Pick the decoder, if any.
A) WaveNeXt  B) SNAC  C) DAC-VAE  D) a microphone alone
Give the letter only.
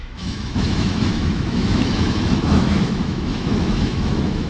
C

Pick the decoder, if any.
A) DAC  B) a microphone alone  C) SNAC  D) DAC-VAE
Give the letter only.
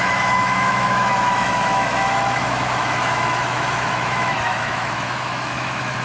D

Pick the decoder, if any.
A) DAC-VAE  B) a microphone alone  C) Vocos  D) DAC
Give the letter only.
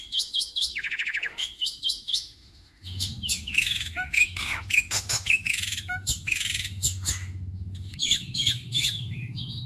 A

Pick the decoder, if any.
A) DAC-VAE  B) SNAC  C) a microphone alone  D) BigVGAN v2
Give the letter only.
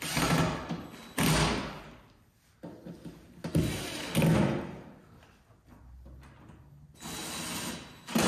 C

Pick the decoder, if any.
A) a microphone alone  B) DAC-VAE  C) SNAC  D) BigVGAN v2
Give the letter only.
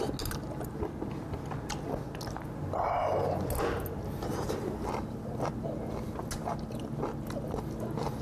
A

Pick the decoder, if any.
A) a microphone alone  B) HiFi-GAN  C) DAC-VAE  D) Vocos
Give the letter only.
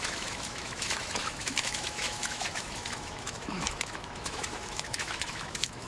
C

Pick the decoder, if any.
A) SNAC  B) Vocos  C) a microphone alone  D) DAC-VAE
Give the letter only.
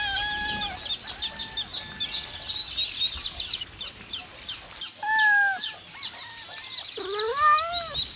C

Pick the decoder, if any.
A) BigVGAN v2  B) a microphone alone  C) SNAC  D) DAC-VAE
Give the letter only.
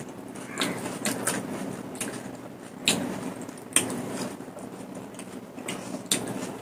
B